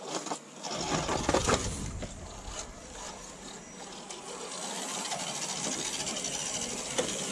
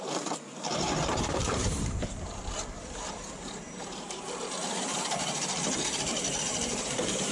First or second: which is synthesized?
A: second